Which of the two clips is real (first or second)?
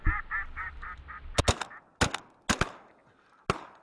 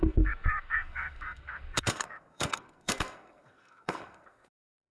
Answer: first